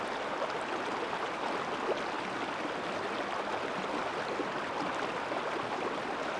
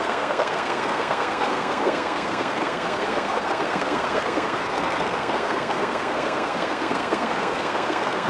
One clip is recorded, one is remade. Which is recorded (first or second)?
first